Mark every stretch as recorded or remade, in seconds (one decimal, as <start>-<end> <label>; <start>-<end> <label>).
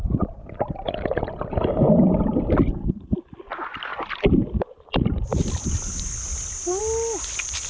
0.0-7.7 recorded